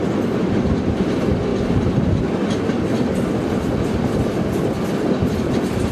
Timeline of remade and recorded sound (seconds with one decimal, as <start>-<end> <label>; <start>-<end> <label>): 0.0-5.9 recorded